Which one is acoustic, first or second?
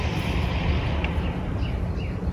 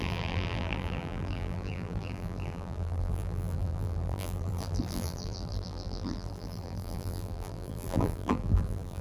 first